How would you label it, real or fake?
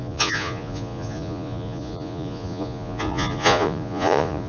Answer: fake